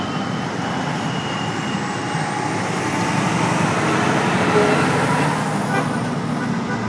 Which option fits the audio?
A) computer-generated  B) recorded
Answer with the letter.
B